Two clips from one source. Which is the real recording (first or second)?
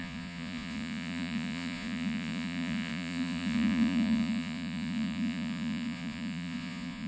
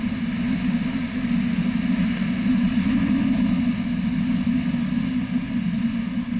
second